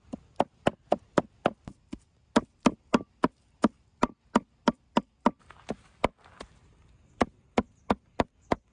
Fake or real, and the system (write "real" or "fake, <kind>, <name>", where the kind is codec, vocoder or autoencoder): real